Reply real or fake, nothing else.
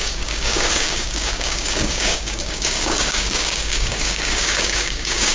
fake